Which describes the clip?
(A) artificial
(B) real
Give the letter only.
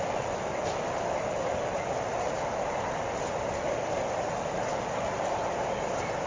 B